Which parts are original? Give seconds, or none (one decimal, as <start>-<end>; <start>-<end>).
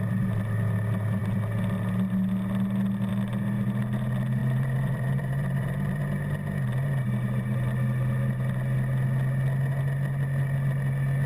0.0-4.4; 6.0-11.3